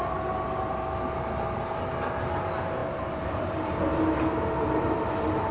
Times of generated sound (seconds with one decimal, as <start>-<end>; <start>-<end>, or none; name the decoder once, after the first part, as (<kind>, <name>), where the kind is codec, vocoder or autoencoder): 2.8-3.8 (vocoder, BigVGAN v2)